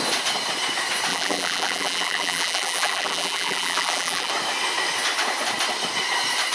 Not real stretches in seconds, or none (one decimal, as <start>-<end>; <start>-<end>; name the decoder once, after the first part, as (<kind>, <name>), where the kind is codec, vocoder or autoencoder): 1.1-4.3 (vocoder, BigVGAN v2)